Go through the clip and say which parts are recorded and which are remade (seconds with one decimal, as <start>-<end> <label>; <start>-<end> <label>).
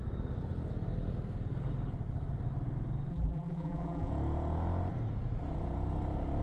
0.0-3.1 recorded; 3.1-4.1 remade; 4.1-6.4 recorded